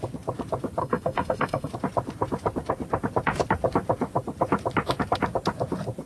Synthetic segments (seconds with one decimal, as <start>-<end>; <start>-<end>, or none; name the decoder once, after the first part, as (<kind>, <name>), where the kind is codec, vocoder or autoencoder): 0.8-1.7 (codec, SNAC)